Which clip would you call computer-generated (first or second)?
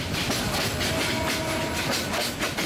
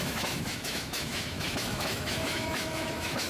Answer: second